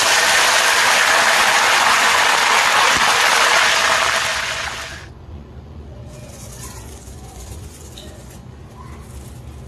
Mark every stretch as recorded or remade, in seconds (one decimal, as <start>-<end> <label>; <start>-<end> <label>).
0.0-1.4 recorded; 1.4-2.2 remade; 2.2-4.3 recorded; 4.3-8.6 remade; 8.6-9.7 recorded